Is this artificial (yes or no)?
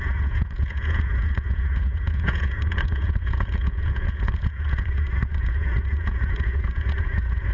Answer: yes